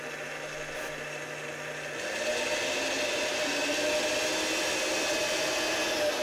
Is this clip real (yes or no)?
yes